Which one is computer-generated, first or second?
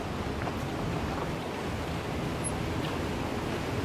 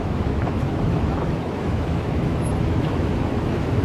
second